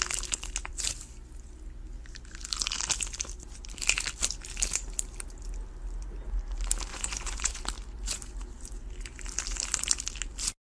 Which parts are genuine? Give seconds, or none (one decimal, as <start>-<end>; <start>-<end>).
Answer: 0.0-6.9; 7.6-10.6